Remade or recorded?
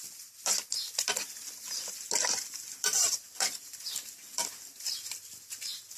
remade